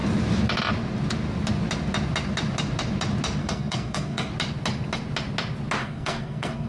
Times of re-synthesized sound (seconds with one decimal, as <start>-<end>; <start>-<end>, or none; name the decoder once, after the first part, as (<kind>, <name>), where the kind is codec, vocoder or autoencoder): 3.4-4.3 (codec, SNAC); 5.8-6.7